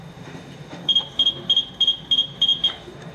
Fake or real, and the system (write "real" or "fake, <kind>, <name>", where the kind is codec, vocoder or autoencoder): fake, autoencoder, DAC-VAE